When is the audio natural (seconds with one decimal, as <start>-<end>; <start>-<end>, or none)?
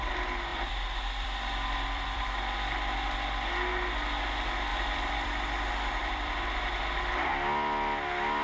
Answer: 0.0-0.5; 2.2-4.7; 5.3-6.0; 6.8-8.4